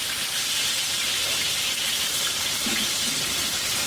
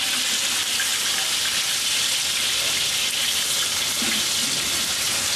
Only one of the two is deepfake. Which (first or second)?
first